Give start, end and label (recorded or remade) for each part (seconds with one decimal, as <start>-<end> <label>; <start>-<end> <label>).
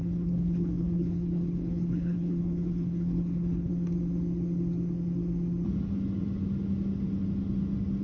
0.0-3.7 remade; 3.7-8.0 recorded